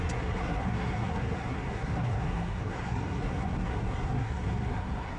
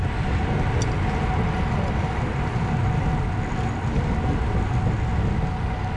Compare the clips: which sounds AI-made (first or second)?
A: first